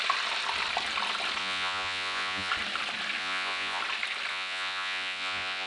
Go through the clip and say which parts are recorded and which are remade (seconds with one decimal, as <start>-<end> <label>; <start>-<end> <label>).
0.0-1.4 recorded; 1.4-2.5 remade; 2.5-3.2 recorded; 3.2-3.8 remade; 3.8-4.3 recorded; 4.3-5.7 remade